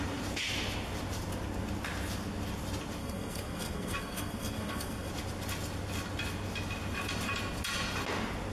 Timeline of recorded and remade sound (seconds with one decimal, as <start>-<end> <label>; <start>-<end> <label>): 0.0-3.0 recorded; 3.0-5.1 remade; 5.1-8.5 recorded